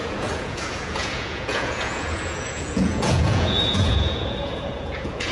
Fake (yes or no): yes